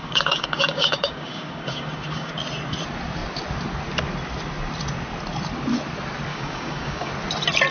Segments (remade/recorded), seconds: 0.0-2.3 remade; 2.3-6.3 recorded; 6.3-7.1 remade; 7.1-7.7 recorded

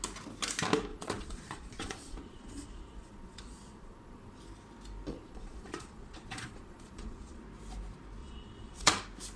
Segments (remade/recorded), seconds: 0.0-0.9 recorded; 0.9-4.4 remade; 4.4-5.1 recorded; 5.1-7.4 remade; 7.4-8.2 recorded; 8.2-9.0 remade; 9.0-9.4 recorded

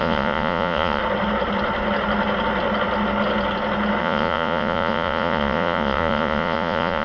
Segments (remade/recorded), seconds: 0.0-1.0 remade; 1.0-4.0 recorded; 4.0-7.0 remade

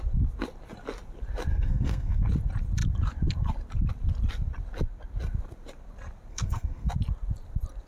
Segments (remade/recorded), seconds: 0.0-1.5 recorded; 1.5-2.2 remade; 2.2-6.3 recorded; 6.3-6.9 remade; 6.9-7.9 recorded

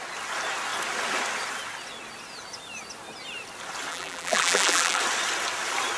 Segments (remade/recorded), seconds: 0.0-3.9 recorded; 3.9-5.0 remade; 5.0-6.0 recorded

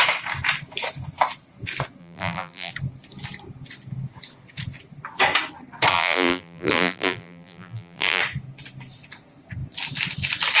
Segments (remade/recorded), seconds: 0.0-2.0 recorded; 2.0-2.7 remade; 2.7-5.9 recorded; 5.9-8.2 remade; 8.2-10.6 recorded

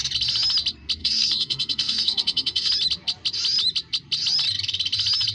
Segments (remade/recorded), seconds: 0.0-1.0 recorded; 1.0-2.7 remade; 2.7-5.3 recorded